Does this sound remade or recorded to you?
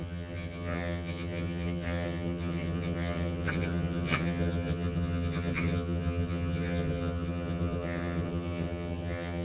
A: remade